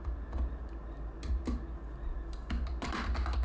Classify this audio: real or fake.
real